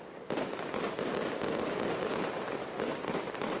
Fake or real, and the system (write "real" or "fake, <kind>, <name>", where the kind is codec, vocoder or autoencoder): real